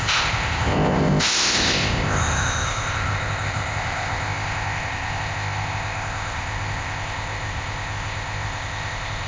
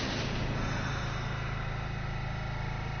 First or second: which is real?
second